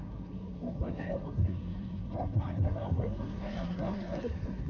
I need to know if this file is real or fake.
fake